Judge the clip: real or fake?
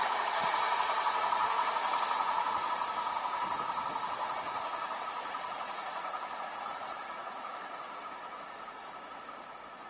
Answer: fake